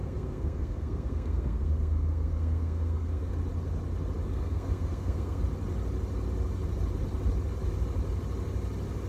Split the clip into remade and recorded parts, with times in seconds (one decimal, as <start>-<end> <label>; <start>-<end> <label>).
0.0-3.3 remade; 3.3-4.3 recorded; 4.3-5.4 remade; 5.4-9.1 recorded